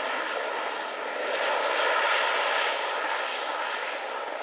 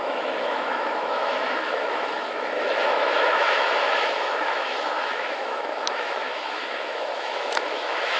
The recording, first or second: first